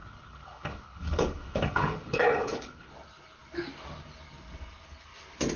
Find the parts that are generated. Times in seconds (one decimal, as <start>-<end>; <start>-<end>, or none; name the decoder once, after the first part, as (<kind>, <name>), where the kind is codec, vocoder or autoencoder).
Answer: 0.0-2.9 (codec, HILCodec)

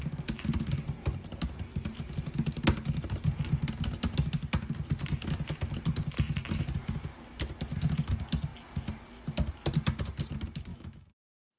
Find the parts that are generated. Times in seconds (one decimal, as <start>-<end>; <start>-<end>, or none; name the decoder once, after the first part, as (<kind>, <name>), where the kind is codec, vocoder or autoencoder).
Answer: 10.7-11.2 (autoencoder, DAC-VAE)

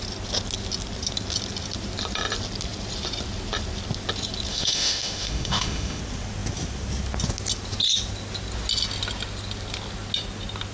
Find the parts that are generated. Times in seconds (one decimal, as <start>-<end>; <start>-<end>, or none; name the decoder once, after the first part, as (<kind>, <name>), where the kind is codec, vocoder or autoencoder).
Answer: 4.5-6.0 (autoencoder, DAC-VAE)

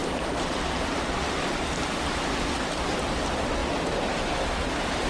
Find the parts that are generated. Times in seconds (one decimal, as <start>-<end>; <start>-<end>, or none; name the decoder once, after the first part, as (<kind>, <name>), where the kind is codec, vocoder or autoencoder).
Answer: none

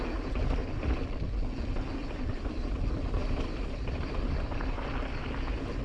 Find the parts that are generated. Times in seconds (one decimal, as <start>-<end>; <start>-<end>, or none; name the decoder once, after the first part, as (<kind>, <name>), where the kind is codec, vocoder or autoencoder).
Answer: 0.6-1.1 (vocoder, BigVGAN v2); 2.0-2.7; 3.2-4.9

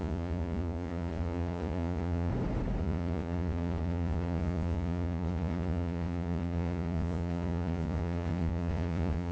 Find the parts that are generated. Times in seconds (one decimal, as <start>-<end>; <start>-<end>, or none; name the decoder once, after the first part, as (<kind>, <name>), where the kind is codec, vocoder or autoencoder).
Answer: 0.0-2.3 (vocoder, Vocos); 2.8-9.3

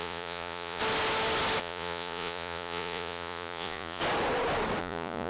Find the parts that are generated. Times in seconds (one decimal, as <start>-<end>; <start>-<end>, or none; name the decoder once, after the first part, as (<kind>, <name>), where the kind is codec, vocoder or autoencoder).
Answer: 0.0-0.8 (vocoder, Vocos); 1.6-4.0; 4.8-5.3

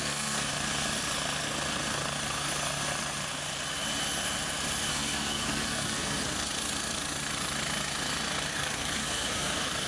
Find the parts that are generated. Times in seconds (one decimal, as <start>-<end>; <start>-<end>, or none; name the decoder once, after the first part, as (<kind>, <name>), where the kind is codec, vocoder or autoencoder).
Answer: 0.0-0.5 (codec, SNAC); 4.9-6.5; 8.5-9.9